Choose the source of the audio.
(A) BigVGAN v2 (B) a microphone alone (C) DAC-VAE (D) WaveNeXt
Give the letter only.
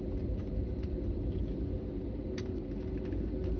B